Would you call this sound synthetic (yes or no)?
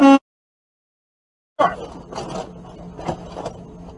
no